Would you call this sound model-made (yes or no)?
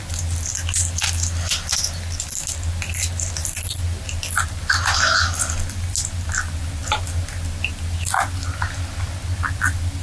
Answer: no